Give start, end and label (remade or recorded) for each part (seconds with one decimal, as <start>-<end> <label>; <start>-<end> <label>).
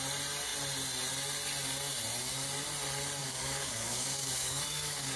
0.0-3.2 recorded; 3.2-5.2 remade